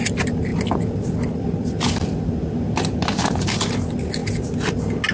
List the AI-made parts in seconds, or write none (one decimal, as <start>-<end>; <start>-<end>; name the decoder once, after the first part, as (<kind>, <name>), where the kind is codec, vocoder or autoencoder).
none